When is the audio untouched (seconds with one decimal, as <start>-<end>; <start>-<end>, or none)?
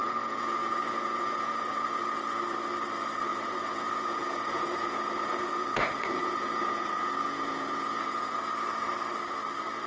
2.0-3.3; 8.4-9.9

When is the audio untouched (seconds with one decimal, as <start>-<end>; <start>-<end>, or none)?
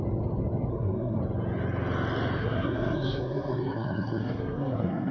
0.0-0.7; 1.2-2.4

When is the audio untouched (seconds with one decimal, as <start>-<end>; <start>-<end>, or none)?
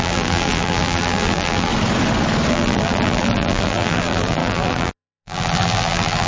1.7-2.5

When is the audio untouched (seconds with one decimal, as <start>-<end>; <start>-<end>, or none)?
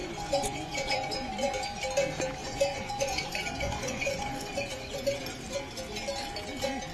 1.3-2.4; 5.2-6.9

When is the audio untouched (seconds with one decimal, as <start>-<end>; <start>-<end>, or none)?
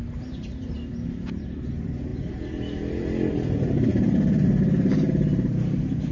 0.0-6.1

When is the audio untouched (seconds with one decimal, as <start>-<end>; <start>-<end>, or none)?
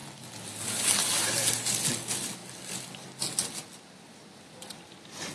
0.0-5.3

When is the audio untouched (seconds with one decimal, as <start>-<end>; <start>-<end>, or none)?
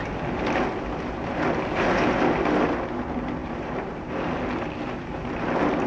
0.0-3.4; 4.1-5.9